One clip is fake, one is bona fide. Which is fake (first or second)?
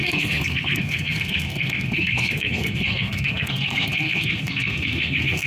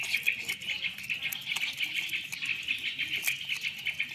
first